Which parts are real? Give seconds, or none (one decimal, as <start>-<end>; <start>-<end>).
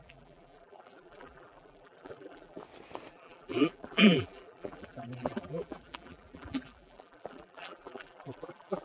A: 2.6-3.1